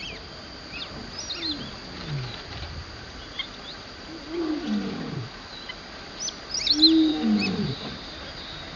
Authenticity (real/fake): real